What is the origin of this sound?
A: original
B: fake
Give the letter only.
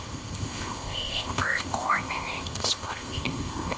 B